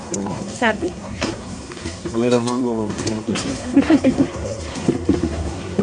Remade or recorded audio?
remade